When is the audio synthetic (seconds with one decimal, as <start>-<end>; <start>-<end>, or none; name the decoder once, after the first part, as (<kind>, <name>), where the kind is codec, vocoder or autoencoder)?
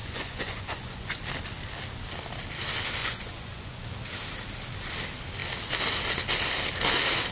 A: 0.0-1.2 (vocoder, Vocos); 3.0-3.8